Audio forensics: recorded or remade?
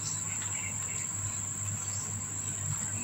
recorded